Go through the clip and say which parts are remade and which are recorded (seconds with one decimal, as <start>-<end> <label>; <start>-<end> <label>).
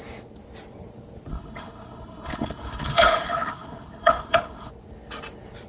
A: 0.0-1.3 recorded; 1.3-4.7 remade; 4.7-5.7 recorded